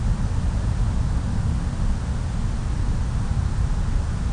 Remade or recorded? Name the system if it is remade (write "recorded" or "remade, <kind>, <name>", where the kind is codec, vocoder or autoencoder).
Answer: recorded